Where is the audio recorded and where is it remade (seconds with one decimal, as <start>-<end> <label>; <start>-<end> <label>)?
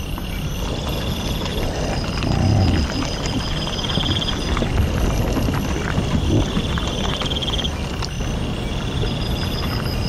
0.0-10.1 recorded